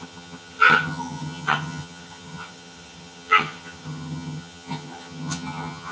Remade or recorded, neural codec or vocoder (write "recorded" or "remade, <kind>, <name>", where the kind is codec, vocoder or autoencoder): remade, vocoder, HiFi-GAN